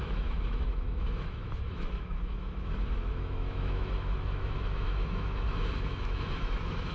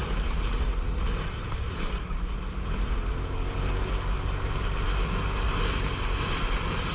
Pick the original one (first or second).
second